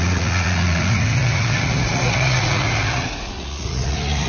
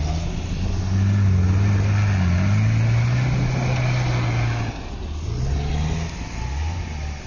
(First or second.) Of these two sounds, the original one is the second